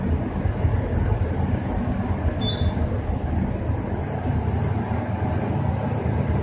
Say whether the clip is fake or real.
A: real